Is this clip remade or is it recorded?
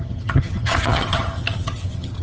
remade